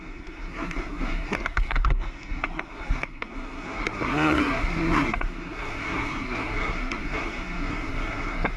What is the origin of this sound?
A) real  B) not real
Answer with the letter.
B